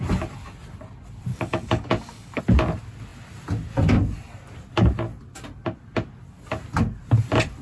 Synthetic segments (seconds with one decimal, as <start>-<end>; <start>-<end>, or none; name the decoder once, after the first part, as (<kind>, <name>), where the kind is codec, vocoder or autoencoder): 1.3-2.4 (codec, DAC)